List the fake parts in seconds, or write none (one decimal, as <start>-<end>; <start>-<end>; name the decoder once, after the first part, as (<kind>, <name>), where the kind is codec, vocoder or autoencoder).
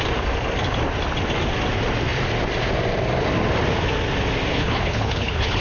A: 4.5-5.6 (codec, HILCodec)